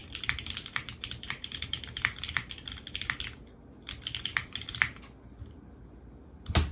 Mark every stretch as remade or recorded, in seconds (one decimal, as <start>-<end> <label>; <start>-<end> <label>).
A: 0.0-2.5 remade; 2.5-4.3 recorded; 4.3-4.8 remade; 4.8-6.7 recorded